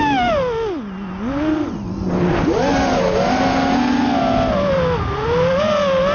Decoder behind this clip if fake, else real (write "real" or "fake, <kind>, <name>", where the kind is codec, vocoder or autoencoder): real